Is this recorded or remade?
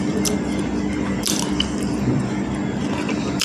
remade